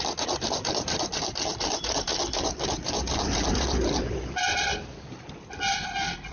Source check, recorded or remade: recorded